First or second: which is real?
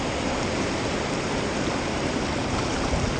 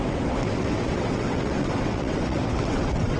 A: first